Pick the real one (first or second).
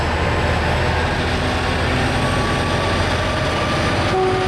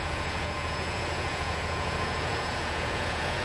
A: first